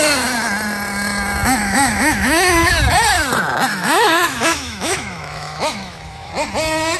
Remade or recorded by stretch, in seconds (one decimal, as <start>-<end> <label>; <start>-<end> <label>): 0.0-1.6 recorded; 1.6-2.7 remade; 2.7-3.7 recorded; 3.7-6.3 remade; 6.3-7.0 recorded